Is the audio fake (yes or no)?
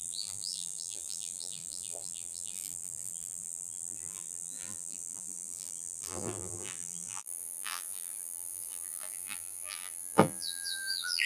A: yes